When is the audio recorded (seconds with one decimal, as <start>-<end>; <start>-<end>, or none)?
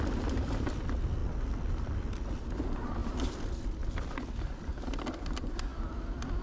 0.0-6.4